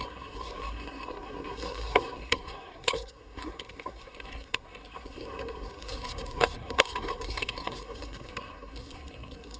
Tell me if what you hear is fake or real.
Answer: fake